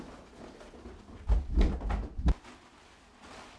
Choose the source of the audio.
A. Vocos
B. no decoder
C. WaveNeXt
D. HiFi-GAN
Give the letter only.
B